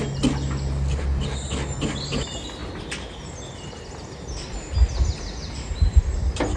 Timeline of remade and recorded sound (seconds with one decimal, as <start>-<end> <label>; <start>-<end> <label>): 0.0-6.6 recorded